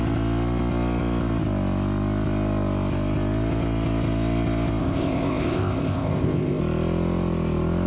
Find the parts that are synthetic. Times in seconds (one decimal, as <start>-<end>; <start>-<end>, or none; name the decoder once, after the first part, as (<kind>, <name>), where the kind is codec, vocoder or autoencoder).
4.8-6.6 (codec, ZipCodec)